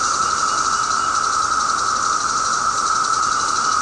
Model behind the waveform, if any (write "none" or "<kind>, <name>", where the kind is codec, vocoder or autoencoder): none